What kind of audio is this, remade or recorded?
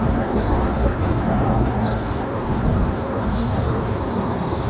remade